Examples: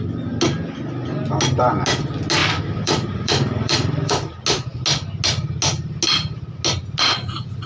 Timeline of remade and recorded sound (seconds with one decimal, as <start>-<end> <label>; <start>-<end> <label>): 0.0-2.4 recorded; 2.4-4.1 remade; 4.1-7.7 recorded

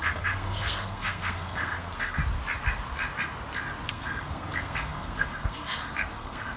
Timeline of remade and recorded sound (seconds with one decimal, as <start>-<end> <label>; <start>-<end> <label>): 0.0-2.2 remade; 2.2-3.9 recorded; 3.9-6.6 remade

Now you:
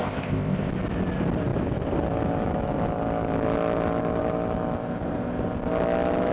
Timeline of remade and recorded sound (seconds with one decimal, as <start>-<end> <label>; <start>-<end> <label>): 0.0-0.7 remade; 0.7-6.3 recorded